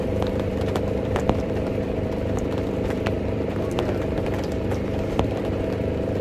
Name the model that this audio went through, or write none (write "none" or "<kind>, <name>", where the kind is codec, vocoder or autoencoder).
vocoder, BigVGAN v2